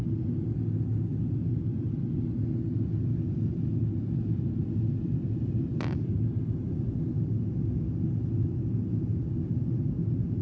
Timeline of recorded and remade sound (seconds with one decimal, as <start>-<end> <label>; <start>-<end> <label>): 0.0-10.4 recorded